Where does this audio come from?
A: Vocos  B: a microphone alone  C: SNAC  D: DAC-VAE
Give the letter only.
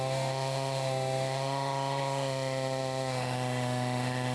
D